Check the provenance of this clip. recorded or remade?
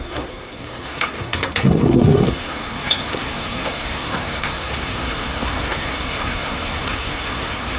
remade